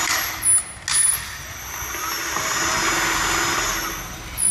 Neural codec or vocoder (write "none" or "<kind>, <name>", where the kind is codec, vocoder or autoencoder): none